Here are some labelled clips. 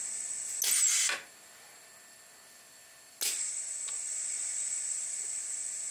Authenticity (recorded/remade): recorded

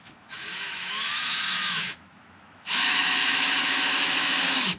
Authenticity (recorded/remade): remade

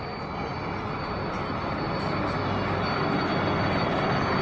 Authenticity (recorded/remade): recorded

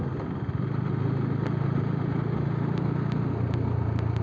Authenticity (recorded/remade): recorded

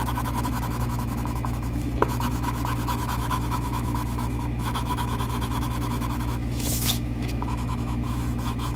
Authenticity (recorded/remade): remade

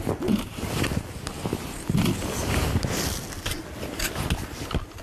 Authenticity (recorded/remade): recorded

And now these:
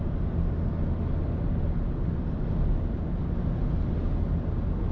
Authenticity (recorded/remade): recorded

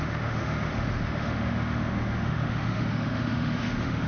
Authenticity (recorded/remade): remade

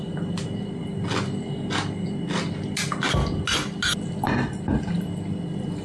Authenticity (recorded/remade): recorded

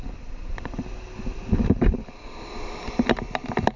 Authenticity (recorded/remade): recorded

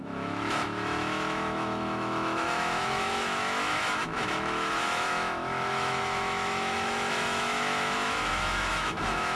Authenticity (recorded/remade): remade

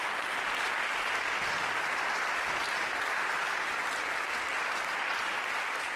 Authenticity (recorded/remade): recorded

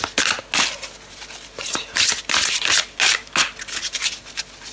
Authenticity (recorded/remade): recorded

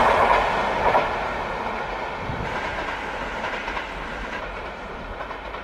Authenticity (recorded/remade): recorded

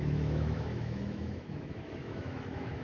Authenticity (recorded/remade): remade